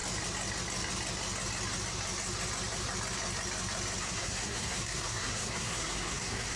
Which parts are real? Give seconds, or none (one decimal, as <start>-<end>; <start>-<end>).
0.0-4.0